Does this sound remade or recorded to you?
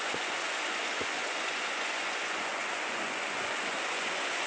remade